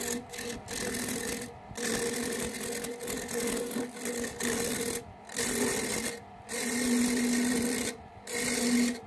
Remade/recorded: recorded